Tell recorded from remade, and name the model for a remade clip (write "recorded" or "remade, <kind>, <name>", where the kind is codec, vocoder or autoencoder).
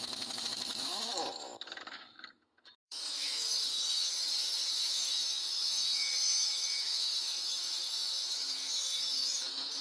remade, autoencoder, DAC-VAE